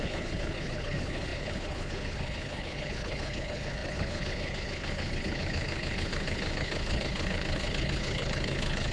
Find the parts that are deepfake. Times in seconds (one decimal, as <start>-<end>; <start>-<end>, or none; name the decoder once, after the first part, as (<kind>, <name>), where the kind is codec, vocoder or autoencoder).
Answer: 0.0-8.9 (codec, HILCodec)